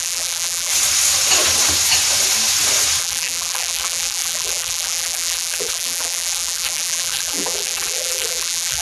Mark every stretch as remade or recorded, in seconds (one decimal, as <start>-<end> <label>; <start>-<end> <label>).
0.0-0.7 remade; 0.7-3.0 recorded; 3.0-8.8 remade